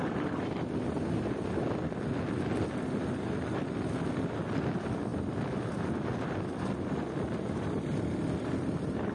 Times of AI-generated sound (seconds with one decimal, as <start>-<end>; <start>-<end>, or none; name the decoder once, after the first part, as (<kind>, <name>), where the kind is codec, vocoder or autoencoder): none